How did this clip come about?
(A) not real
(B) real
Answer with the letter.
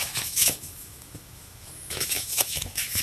A